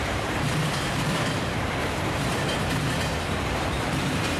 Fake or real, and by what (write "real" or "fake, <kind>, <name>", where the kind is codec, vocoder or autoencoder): fake, vocoder, BigVGAN v2